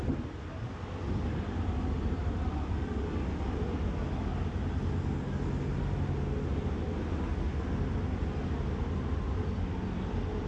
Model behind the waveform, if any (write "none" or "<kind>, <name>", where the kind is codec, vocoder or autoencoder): none